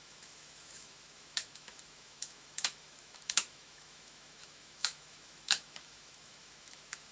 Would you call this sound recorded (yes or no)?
no